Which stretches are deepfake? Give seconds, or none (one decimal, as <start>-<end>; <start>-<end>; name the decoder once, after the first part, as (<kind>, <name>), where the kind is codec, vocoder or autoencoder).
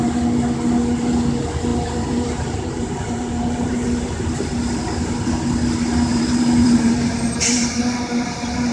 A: 1.7-4.4 (vocoder, BigVGAN v2); 6.1-7.8